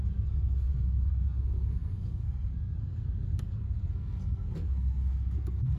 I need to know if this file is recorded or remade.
remade